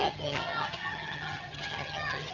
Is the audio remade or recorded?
remade